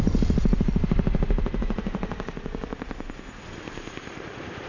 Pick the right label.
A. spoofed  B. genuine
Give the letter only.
B